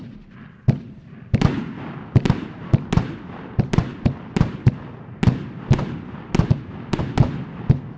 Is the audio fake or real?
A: real